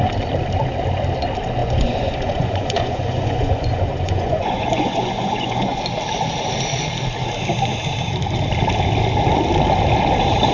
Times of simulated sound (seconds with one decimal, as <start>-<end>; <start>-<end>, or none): 1.6-5.8